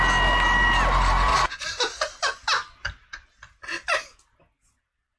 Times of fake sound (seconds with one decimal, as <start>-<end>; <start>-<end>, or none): none